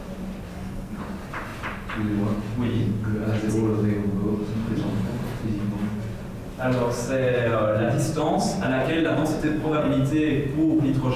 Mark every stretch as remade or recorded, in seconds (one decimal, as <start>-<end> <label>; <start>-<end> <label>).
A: 0.0-0.5 recorded; 0.5-1.0 remade; 1.0-9.4 recorded; 9.4-9.9 remade; 9.9-11.2 recorded